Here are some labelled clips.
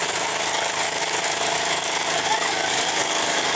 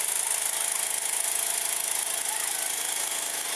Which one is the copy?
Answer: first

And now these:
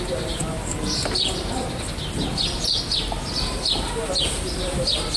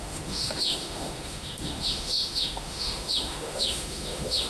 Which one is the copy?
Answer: second